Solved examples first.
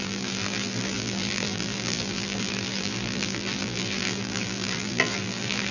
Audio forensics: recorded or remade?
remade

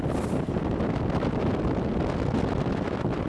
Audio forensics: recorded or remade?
recorded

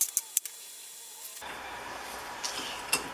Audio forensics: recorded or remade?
recorded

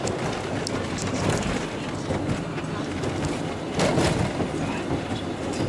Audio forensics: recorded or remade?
recorded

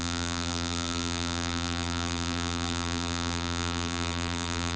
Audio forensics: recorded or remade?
remade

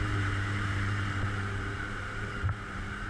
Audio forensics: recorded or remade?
remade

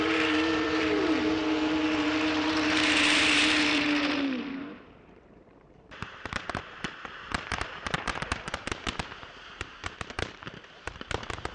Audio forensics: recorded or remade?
remade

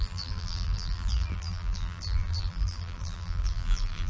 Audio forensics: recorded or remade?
remade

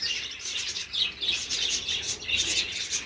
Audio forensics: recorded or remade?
recorded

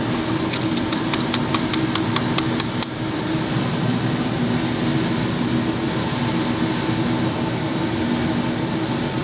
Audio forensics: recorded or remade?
recorded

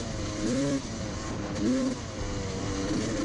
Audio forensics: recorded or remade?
remade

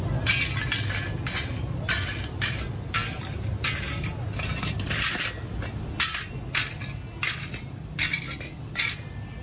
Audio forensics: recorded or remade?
recorded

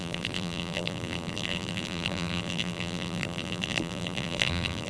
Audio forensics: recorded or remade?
remade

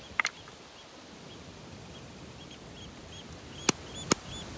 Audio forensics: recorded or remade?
recorded